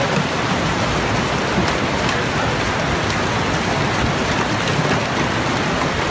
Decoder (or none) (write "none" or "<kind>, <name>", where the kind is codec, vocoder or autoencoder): none